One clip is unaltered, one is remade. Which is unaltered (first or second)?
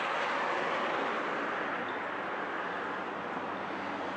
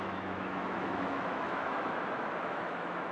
first